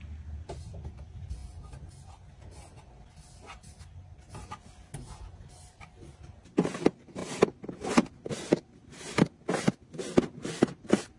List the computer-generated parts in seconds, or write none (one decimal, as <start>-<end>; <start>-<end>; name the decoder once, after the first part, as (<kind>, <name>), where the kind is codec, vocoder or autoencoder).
none